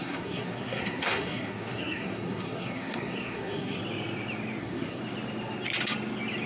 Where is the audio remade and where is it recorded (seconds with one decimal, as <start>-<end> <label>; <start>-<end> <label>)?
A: 0.0-3.8 remade; 3.8-4.6 recorded; 4.6-5.0 remade; 5.0-6.5 recorded